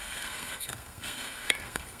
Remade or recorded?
remade